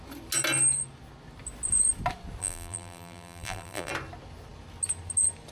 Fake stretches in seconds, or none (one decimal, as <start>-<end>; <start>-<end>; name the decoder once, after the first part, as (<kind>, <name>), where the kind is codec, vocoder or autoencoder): 2.4-3.9 (vocoder, BigVGAN v2)